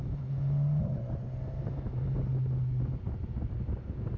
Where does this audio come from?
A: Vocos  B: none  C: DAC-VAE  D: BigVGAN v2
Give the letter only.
B